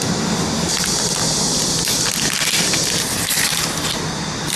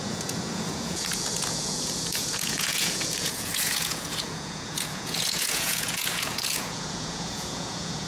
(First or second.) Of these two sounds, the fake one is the second